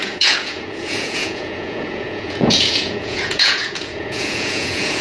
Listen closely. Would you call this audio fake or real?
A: fake